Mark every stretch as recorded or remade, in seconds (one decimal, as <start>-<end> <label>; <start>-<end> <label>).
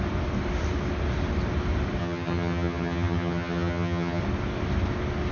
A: 0.0-2.0 recorded; 2.0-4.2 remade; 4.2-5.3 recorded